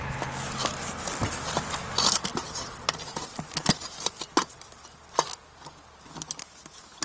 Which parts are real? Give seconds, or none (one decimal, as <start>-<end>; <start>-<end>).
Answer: 0.0-7.0